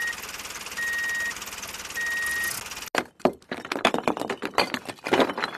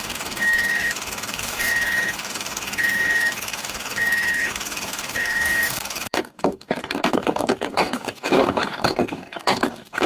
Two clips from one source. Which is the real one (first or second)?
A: first